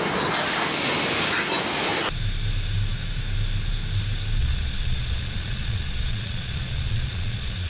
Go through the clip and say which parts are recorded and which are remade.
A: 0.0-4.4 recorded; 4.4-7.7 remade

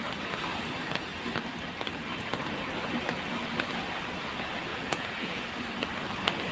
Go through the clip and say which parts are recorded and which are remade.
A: 0.0-4.7 recorded; 4.7-5.4 remade; 5.4-6.5 recorded